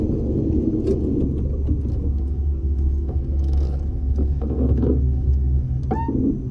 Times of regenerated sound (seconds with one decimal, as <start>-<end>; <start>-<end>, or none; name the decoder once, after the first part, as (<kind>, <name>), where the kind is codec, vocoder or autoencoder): 1.9-5.8 (codec, SNAC)